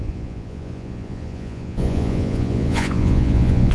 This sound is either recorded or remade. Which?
remade